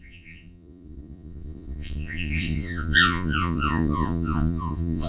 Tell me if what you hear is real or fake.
fake